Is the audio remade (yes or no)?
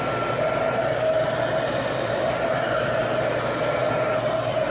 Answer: yes